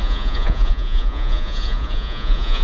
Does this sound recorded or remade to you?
remade